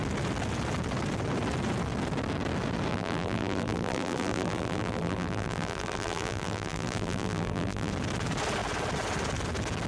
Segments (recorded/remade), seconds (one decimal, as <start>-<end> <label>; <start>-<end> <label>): 0.0-2.9 recorded; 2.9-7.9 remade; 7.9-9.9 recorded